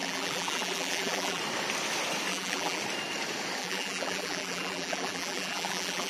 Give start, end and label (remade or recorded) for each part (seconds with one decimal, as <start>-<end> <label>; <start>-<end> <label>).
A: 0.0-1.4 remade; 1.4-2.3 recorded; 2.3-2.8 remade; 2.8-3.6 recorded; 3.6-6.1 remade